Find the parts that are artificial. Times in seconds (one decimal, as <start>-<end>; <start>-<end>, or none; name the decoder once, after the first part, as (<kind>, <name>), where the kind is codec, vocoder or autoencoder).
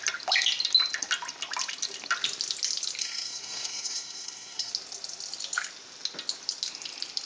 3.0-4.7 (codec, SNAC)